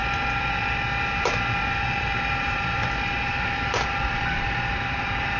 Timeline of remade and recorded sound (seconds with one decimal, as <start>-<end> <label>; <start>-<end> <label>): 0.0-1.0 recorded; 1.0-5.4 remade